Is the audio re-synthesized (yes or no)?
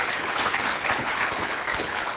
yes